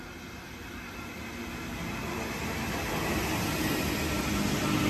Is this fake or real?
real